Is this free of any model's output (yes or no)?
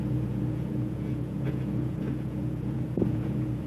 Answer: no